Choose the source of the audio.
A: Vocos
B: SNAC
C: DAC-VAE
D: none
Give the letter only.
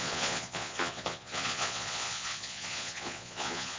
A